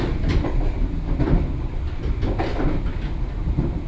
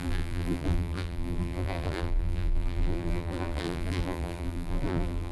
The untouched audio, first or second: first